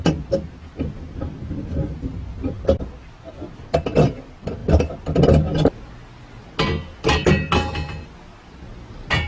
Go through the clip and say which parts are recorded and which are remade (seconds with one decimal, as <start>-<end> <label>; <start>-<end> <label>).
0.0-9.3 recorded